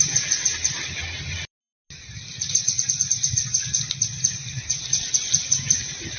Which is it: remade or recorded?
recorded